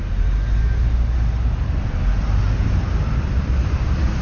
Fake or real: real